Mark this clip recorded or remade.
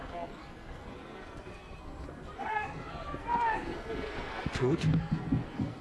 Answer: remade